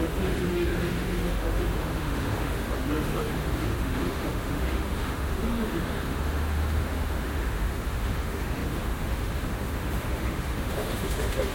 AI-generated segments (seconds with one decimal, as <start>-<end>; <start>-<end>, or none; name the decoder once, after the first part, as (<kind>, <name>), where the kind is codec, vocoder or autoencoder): 0.0-11.5 (autoencoder, DAC-VAE)